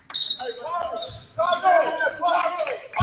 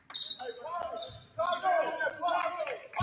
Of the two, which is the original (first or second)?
second